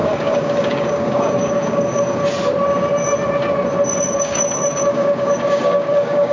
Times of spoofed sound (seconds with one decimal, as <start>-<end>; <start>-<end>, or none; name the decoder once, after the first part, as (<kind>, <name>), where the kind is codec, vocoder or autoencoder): 0.0-2.2 (codec, DAC); 4.0-6.3